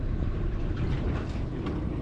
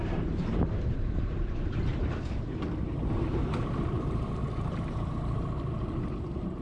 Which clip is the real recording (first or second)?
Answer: first